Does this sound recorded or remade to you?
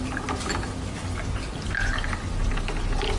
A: recorded